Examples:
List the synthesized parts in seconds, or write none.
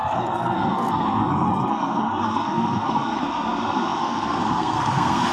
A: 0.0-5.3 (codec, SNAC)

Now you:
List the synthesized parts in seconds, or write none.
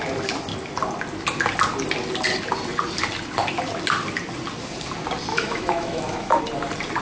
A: 5.3-6.4 (autoencoder, DAC-VAE)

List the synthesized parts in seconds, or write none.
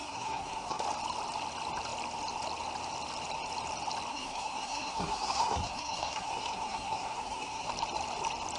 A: 0.0-0.8 (codec, SNAC); 4.1-7.7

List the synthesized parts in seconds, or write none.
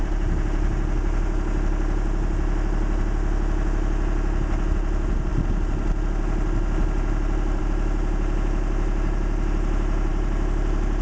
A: none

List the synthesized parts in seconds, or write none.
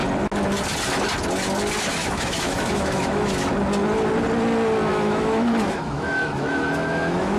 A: 2.0-3.5 (autoencoder, DAC-VAE); 4.9-7.4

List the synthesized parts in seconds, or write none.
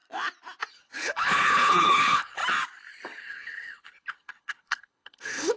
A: 0.7-2.4 (codec, HILCodec); 3.2-5.6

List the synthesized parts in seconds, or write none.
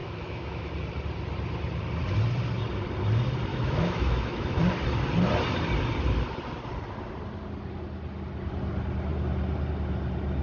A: 0.0-0.7 (autoencoder, DAC-VAE); 3.5-4.6